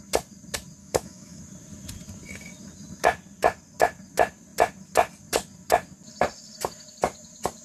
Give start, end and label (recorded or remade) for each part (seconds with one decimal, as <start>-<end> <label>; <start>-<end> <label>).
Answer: 0.0-0.8 recorded; 0.8-1.4 remade; 1.4-7.6 recorded